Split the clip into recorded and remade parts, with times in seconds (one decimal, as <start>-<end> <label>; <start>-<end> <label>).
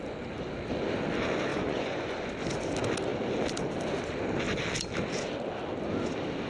0.0-1.5 recorded; 1.5-2.3 remade; 2.3-6.5 recorded